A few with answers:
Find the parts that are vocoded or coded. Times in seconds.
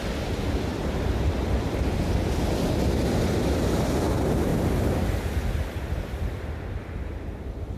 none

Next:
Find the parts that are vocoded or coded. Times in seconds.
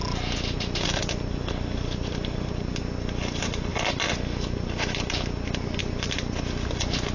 none